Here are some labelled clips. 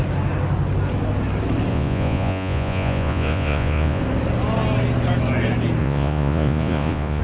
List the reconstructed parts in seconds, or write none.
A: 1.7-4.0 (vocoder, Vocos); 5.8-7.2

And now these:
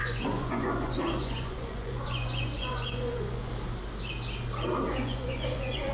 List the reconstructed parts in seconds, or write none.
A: 0.0-3.5 (vocoder, Vocos); 4.9-5.9

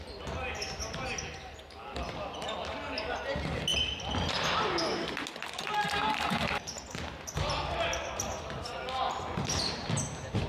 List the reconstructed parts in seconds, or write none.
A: none